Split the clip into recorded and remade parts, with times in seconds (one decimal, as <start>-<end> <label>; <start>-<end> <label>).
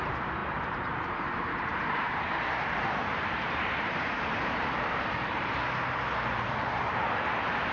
0.0-7.7 remade